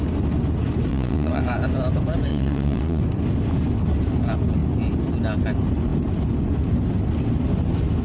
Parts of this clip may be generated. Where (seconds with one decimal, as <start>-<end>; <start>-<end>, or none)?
0.9-1.4; 2.3-3.0